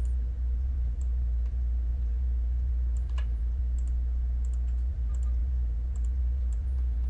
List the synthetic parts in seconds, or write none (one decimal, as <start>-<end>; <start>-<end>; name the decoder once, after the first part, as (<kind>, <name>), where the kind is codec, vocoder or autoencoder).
0.0-3.6 (vocoder, BigVGAN v2); 4.9-7.1